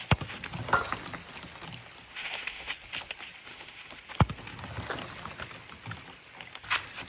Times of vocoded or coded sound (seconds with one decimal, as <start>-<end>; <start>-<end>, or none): 2.1-2.7; 3.5-4.0